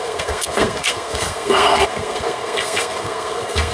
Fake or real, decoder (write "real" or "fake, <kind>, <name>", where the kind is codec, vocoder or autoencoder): fake, codec, SNAC